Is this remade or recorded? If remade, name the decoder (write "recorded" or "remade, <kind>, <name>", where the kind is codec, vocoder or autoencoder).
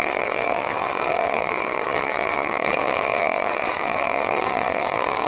remade, vocoder, WaveNeXt